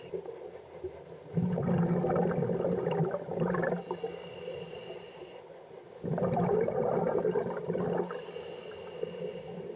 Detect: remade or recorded recorded